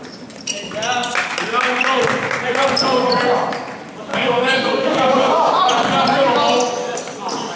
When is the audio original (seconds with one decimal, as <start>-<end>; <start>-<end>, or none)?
0.0-4.1; 5.6-7.6